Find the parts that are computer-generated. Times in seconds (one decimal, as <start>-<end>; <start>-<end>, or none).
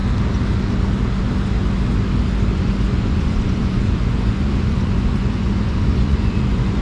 2.5-6.8